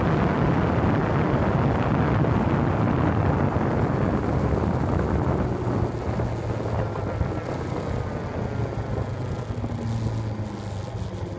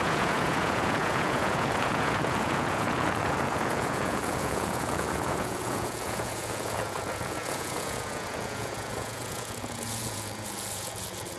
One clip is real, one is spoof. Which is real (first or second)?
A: first